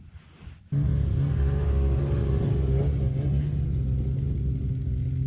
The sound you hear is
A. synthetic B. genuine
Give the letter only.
B